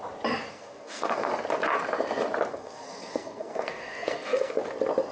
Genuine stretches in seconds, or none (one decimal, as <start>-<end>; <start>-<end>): 0.0-0.5; 1.3-2.5; 4.6-5.1